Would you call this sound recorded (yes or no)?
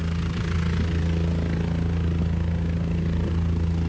yes